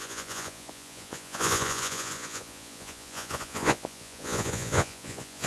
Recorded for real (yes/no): no